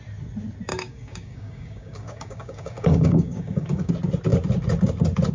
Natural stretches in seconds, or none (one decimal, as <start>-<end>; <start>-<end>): 0.0-0.7; 3.9-5.3